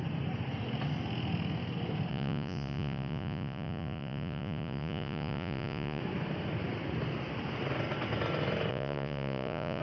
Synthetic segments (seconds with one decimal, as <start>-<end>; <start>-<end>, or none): 2.1-6.0; 8.7-9.8